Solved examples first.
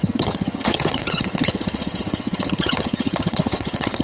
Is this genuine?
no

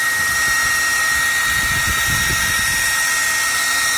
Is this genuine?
yes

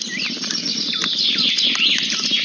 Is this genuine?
yes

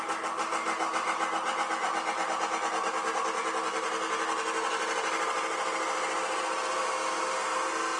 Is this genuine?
yes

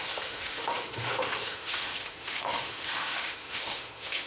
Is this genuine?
no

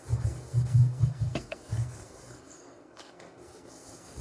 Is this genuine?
no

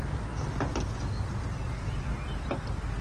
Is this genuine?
yes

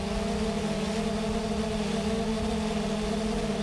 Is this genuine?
yes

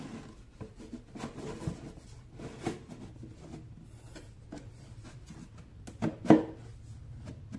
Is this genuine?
yes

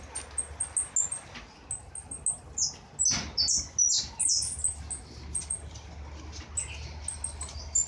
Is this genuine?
yes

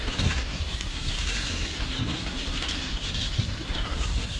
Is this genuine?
no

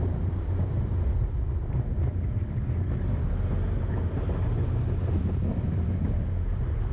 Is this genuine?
yes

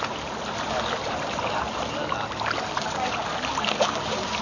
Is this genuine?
yes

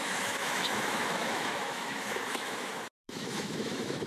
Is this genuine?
no